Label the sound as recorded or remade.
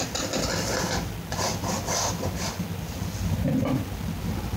recorded